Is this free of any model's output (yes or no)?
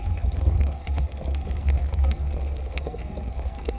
no